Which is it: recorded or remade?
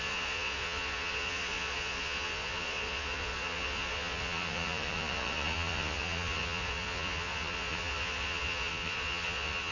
remade